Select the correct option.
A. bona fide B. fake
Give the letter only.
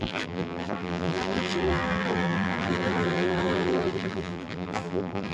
B